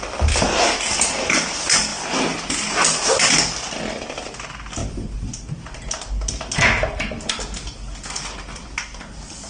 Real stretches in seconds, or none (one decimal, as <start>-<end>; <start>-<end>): 0.0-9.5